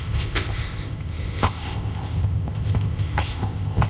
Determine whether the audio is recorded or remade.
remade